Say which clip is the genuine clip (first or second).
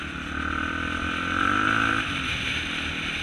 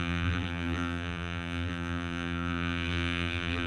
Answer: first